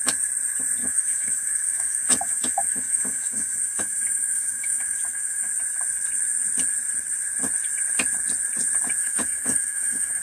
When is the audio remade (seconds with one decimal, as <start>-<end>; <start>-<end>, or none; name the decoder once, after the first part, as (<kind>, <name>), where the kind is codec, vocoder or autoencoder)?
0.8-5.5 (autoencoder, DAC-VAE); 9.0-10.2